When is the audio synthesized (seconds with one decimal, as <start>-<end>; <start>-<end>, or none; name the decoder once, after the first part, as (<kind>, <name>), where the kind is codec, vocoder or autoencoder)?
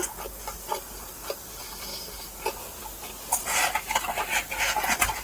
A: none